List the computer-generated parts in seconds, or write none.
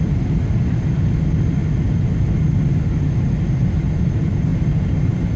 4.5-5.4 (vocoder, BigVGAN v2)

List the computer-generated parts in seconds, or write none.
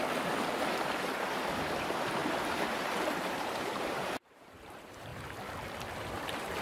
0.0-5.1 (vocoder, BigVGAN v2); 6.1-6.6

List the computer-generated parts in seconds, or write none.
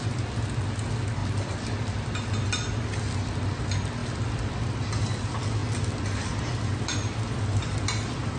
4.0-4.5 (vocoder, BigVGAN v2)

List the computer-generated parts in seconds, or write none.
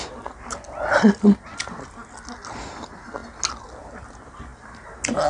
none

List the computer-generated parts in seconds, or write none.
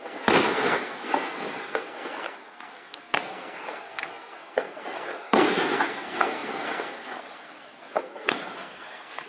0.0-9.3 (codec, SNAC)